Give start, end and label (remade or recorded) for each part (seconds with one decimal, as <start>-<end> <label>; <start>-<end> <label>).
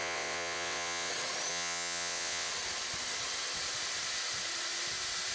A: 0.0-1.1 remade; 1.1-1.5 recorded; 1.5-2.5 remade; 2.5-5.3 recorded